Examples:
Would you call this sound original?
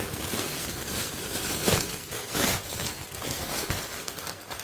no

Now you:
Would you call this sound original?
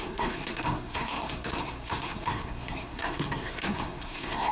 no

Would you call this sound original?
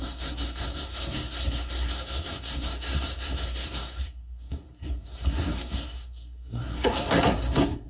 no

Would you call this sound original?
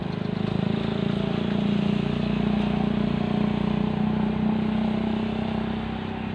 yes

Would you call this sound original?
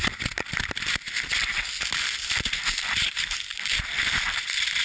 yes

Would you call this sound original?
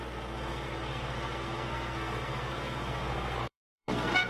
no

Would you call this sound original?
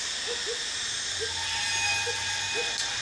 yes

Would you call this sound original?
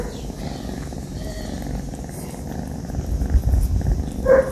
yes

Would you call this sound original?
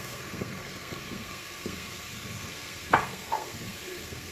no